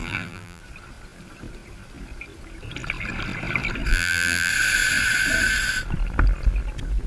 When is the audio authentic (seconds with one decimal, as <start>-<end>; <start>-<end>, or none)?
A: 0.6-3.9; 4.5-7.1